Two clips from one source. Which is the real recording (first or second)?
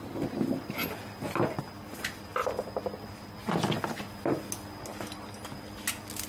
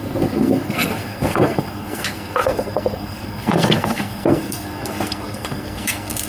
first